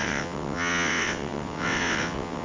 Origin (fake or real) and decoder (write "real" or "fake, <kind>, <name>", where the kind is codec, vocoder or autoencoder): fake, vocoder, WaveNeXt